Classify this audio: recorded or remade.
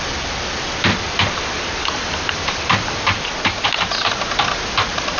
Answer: remade